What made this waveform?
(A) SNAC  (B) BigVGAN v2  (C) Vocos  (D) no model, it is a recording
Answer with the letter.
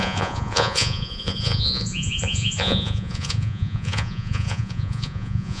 C